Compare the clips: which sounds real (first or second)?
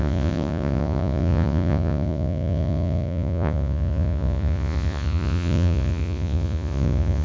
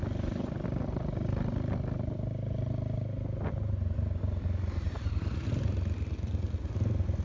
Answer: second